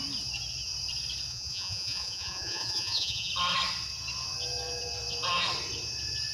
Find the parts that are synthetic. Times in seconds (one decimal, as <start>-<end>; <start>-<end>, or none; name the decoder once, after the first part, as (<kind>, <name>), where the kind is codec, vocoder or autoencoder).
1.3-3.3 (vocoder, Vocos)